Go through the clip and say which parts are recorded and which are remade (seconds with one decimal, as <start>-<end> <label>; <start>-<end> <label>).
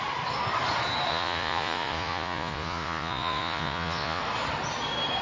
0.0-1.1 recorded; 1.1-4.2 remade; 4.2-5.2 recorded